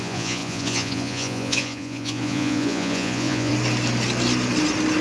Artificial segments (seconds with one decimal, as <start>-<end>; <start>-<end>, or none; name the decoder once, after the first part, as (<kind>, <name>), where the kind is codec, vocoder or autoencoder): 0.0-3.5 (vocoder, Vocos)